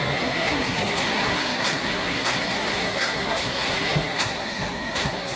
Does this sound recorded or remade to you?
remade